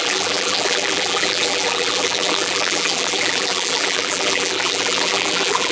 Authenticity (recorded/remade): remade